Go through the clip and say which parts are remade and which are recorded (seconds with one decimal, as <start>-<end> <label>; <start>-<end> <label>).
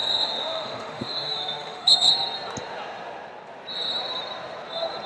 0.0-2.1 remade; 2.1-5.1 recorded